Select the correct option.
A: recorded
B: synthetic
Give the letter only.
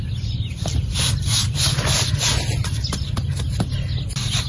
A